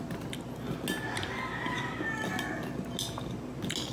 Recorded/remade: recorded